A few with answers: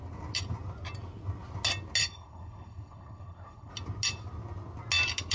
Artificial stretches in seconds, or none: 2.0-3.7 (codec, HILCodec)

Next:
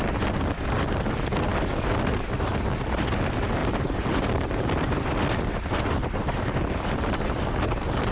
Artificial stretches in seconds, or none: 3.6-5.0 (vocoder, BigVGAN v2)